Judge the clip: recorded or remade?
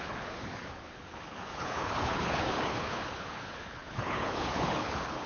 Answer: remade